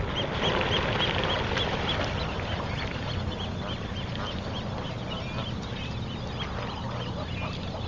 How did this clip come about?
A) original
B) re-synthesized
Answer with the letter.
A